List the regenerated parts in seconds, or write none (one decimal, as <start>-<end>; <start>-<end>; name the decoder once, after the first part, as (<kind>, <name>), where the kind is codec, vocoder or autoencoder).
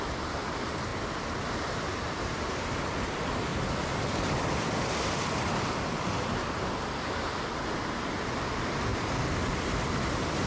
3.5-5.6 (vocoder, BigVGAN v2); 8.9-9.5